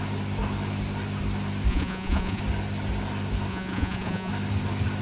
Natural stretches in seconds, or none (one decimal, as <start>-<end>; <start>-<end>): 0.0-1.7; 2.4-3.5; 4.3-5.0